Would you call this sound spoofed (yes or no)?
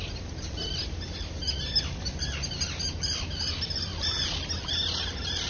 no